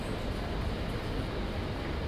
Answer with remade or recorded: recorded